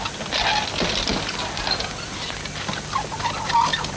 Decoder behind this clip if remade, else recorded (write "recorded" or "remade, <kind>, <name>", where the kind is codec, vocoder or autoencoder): recorded